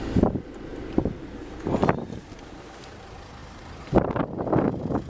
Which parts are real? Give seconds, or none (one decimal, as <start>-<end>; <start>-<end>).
0.0-3.4; 4.2-5.1